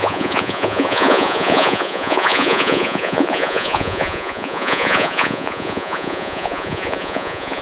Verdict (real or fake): fake